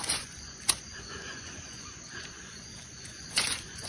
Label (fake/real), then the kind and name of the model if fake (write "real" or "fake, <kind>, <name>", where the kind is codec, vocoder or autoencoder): fake, vocoder, Vocos